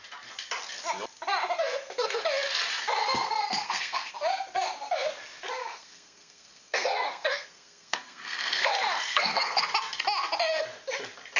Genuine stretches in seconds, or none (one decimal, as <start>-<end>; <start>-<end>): 0.0-1.6; 2.2-3.0; 4.1-5.6; 8.7-9.1; 9.6-11.4